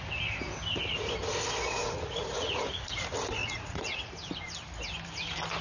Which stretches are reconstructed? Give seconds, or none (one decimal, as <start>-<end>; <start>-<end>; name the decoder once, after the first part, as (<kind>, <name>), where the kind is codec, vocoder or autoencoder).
1.8-3.0 (vocoder, Vocos); 3.4-4.1